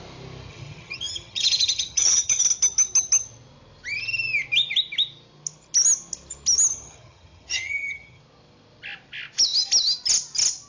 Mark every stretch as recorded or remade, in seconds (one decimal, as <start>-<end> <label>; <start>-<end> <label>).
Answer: 0.0-0.5 recorded; 0.5-2.4 remade; 2.4-6.7 recorded; 6.7-8.2 remade; 8.2-10.7 recorded

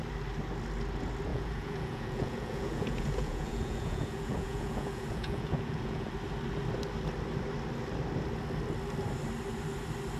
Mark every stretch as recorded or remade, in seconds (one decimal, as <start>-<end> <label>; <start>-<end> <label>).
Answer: 0.0-1.3 recorded; 1.3-6.1 remade; 6.1-10.2 recorded